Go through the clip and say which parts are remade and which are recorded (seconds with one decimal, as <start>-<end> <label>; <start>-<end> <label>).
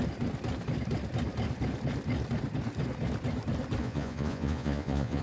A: 0.0-3.8 recorded; 3.8-5.2 remade